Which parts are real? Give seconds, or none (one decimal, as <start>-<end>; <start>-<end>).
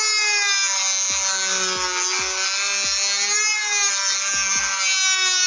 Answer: 0.0-5.5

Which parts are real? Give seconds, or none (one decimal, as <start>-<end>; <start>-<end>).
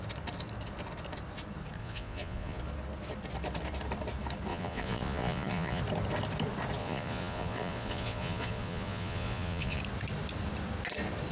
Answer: 0.0-1.8; 2.6-4.5; 5.8-6.8; 9.8-11.3